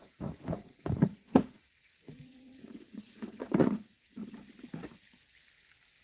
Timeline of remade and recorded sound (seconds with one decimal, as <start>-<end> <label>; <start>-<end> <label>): 0.0-4.2 remade; 4.2-6.0 recorded